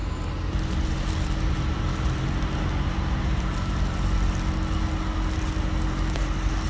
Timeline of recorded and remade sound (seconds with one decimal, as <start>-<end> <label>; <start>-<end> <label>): 0.0-6.7 recorded